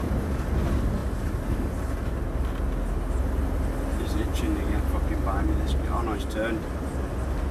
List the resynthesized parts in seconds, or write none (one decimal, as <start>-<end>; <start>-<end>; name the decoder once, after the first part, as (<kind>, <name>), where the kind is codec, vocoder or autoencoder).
1.0-1.8 (vocoder, BigVGAN v2)